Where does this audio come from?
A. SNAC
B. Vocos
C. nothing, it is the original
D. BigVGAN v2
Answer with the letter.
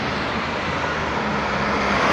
C